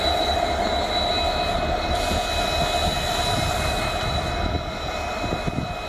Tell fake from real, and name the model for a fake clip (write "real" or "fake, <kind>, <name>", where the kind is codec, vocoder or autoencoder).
real